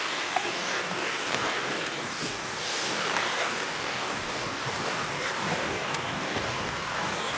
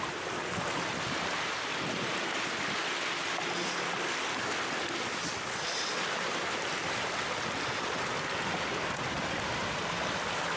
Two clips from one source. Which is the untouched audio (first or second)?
second